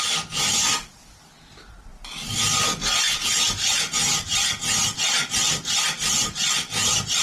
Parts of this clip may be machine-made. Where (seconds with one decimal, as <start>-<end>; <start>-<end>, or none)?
none